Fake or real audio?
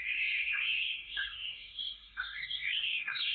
fake